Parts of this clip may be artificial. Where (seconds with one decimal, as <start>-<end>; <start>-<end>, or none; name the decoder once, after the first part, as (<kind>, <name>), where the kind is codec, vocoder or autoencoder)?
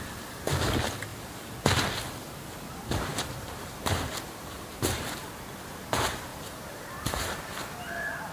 3.1-5.3 (vocoder, BigVGAN v2); 6.3-7.4